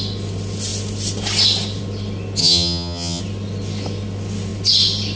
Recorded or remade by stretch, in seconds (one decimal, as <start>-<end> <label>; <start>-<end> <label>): 0.0-2.4 recorded; 2.4-3.2 remade; 3.2-5.2 recorded